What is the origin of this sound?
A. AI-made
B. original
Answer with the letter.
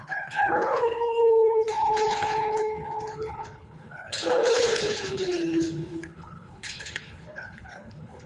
A